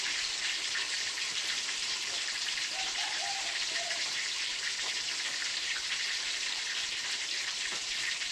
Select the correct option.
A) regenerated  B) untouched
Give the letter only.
A